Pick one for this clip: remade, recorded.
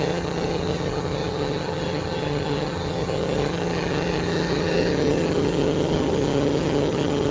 remade